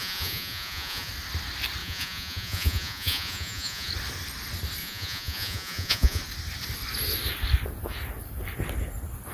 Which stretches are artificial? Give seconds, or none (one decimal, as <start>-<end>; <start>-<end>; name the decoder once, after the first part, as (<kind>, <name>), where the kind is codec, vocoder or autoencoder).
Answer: 0.0-1.1 (vocoder, Vocos); 1.8-3.9; 4.8-6.2